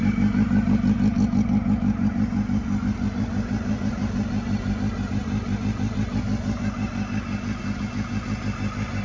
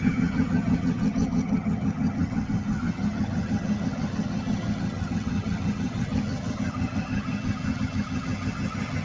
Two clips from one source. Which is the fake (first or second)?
second